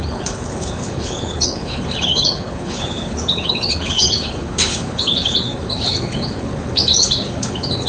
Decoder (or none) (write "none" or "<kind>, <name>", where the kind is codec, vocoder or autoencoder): codec, HILCodec